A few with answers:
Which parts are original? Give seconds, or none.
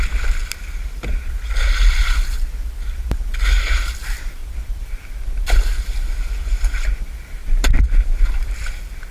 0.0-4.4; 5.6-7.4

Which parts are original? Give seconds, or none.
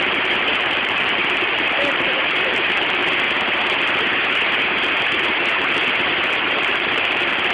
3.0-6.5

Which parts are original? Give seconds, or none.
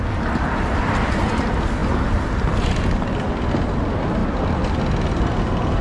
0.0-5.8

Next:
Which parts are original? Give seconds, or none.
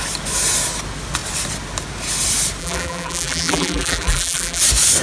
0.0-2.6; 4.6-5.0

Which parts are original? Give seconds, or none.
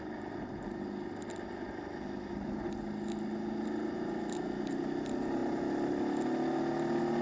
0.0-7.2